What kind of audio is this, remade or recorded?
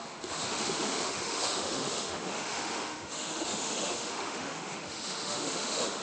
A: remade